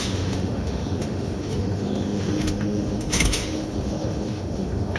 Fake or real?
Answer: fake